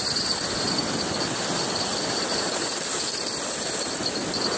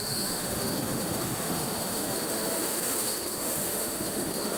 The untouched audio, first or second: first